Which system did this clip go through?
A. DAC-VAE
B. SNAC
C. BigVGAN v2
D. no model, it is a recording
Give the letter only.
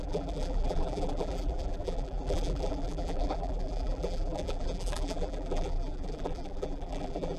C